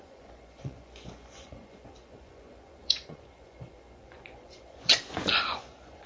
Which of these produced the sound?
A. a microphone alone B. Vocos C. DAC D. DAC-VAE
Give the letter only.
B